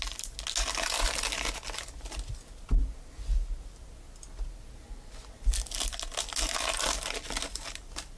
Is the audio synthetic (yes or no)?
no